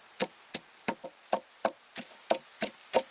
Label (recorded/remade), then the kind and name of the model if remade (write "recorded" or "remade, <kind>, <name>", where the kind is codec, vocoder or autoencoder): recorded